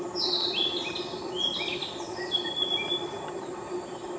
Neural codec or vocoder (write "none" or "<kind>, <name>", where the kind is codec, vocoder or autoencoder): none